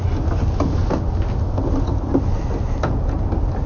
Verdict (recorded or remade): recorded